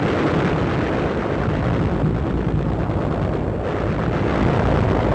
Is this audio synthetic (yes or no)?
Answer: no